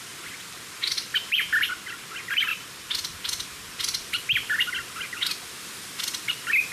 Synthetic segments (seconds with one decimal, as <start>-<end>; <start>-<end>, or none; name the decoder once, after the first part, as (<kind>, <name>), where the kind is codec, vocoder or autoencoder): 1.1-1.7 (vocoder, BigVGAN v2); 2.5-4.7